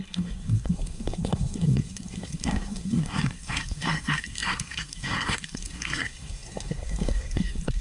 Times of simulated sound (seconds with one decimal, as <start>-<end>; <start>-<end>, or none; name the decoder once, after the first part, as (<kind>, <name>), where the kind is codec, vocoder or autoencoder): 0.0-7.8 (codec, SNAC)